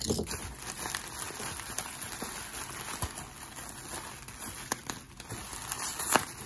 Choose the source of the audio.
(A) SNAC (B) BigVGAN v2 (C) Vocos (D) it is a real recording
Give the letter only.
D